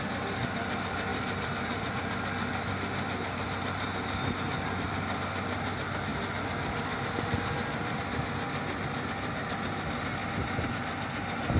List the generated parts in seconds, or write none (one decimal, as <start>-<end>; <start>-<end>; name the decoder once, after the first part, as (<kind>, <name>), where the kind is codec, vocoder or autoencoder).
1.1-1.9 (vocoder, BigVGAN v2)